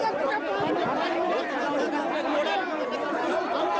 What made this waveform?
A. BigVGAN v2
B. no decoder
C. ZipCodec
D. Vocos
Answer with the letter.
B